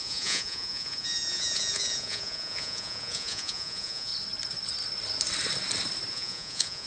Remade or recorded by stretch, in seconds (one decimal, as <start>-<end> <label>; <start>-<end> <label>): 0.0-4.1 remade; 4.1-6.1 recorded; 6.1-6.9 remade